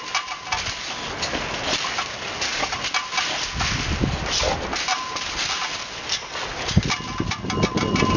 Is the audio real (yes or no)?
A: yes